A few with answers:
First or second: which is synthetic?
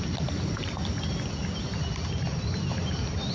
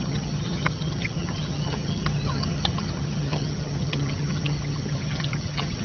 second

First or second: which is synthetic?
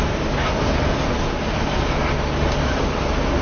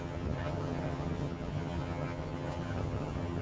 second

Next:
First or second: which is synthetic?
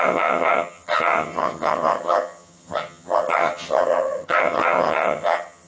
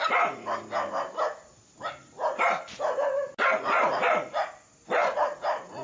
first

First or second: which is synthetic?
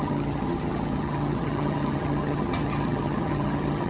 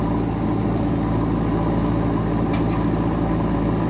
first